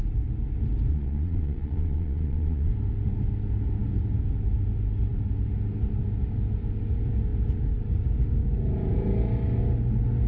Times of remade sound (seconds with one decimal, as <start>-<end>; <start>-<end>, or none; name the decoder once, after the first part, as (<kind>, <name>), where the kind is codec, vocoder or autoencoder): 0.9-2.7 (vocoder, Vocos)